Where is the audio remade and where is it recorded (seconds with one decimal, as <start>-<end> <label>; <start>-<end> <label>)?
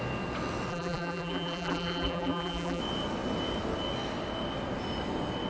0.0-0.7 recorded; 0.7-2.8 remade; 2.8-5.5 recorded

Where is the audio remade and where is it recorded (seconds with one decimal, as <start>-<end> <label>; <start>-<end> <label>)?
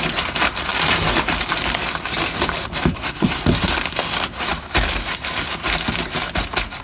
0.0-2.9 recorded; 2.9-3.4 remade; 3.4-6.8 recorded